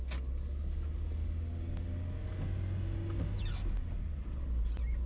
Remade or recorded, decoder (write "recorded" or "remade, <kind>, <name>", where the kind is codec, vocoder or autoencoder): recorded